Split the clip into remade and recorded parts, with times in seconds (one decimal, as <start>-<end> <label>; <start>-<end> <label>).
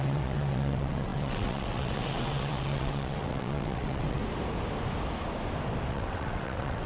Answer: 0.0-4.2 remade; 4.2-5.9 recorded; 5.9-6.9 remade